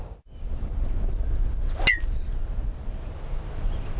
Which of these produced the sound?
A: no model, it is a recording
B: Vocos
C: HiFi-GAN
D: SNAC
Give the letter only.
A